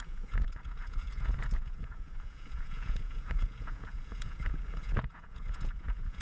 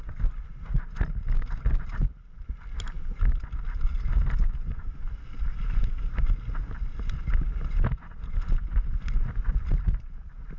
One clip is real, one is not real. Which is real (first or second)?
second